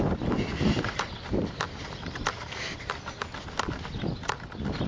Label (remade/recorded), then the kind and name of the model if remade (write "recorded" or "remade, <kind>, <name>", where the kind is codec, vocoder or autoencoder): recorded